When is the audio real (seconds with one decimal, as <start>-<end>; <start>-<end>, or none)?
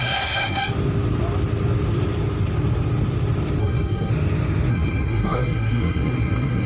0.6-3.6; 4.1-4.7